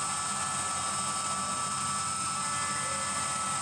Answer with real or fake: real